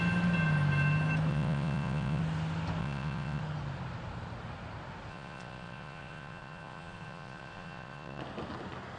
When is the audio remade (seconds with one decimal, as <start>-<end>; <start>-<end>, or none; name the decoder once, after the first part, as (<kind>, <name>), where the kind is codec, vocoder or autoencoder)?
1.3-2.2 (vocoder, Vocos); 2.8-3.4; 5.1-8.2